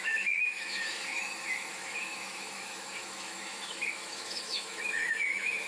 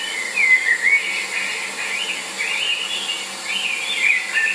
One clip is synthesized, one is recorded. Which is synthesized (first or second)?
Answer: first